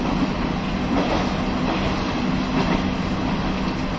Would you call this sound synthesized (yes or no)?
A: no